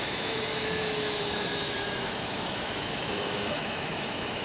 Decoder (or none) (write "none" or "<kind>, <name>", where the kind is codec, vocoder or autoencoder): autoencoder, DAC-VAE